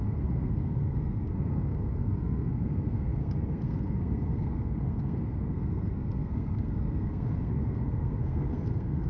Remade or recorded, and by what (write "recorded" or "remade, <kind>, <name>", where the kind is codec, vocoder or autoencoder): remade, codec, SNAC